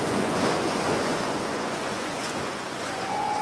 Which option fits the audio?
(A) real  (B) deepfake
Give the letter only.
B